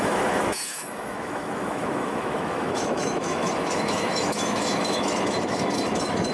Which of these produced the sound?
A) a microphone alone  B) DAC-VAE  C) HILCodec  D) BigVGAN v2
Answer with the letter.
B